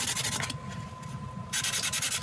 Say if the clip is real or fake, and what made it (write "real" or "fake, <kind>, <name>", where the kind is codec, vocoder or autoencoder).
real